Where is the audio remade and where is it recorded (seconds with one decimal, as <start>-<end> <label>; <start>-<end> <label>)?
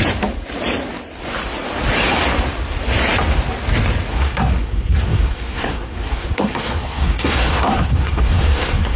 0.0-4.1 recorded; 4.1-9.0 remade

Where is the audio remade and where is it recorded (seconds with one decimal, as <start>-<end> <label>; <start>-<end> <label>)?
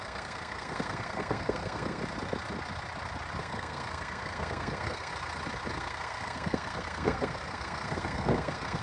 0.0-2.0 remade; 2.0-3.4 recorded; 3.4-5.1 remade; 5.1-5.7 recorded; 5.7-8.8 remade